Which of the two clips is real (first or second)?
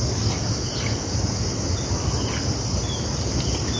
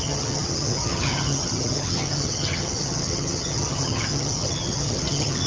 first